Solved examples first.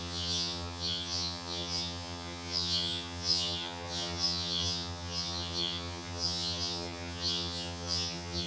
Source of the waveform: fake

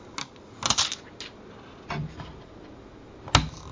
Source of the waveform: real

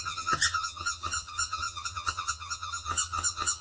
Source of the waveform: fake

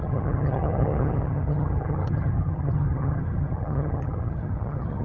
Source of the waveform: fake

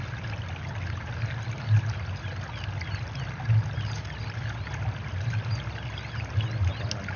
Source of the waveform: real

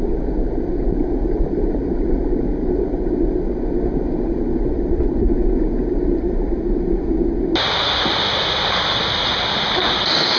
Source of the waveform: real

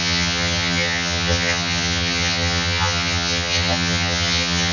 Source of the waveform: fake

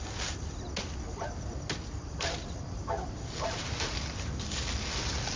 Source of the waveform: real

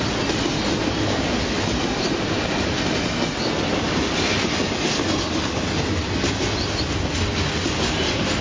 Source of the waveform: real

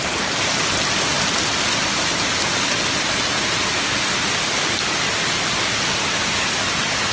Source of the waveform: real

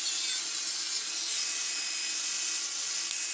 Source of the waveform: real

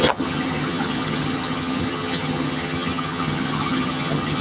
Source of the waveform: fake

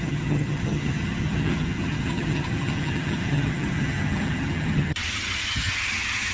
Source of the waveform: fake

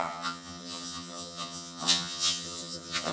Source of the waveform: fake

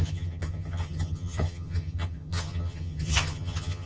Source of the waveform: fake